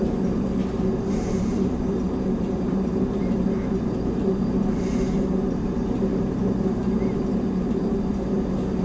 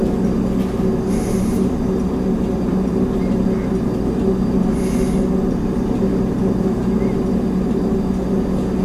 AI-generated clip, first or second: first